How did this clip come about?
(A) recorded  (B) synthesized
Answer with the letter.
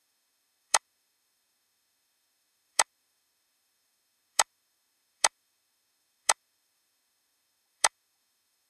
B